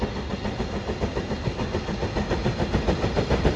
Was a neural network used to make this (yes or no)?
no